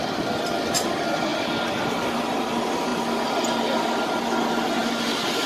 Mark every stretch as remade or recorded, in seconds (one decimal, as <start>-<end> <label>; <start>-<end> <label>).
0.0-5.5 recorded

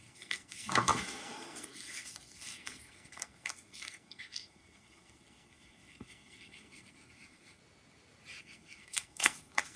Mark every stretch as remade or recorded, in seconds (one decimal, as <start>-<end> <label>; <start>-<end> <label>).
0.0-7.6 remade; 7.6-8.4 recorded; 8.4-9.8 remade

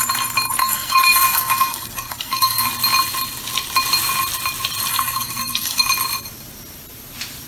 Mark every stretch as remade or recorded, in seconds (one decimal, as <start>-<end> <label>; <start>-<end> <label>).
0.0-0.6 recorded; 0.6-2.7 remade; 2.7-4.9 recorded; 4.9-5.9 remade; 5.9-7.5 recorded

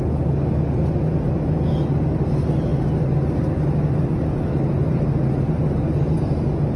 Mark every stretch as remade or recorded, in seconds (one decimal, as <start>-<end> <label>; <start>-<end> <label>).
0.0-6.8 recorded